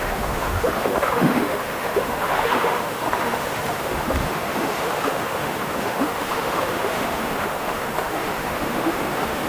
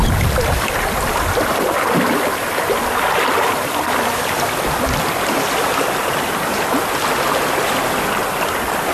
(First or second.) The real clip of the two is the second